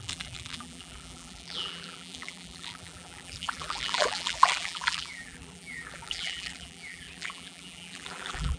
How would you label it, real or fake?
fake